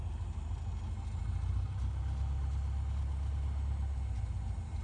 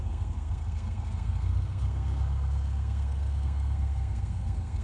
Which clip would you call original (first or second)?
first